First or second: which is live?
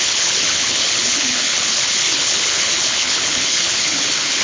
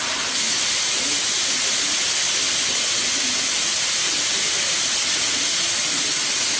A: second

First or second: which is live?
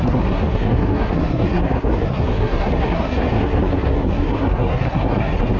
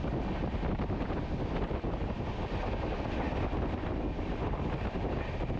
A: second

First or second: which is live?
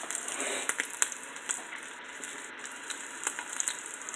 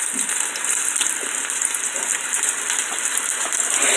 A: first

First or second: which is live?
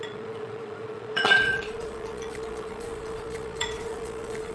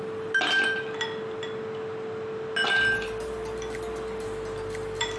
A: second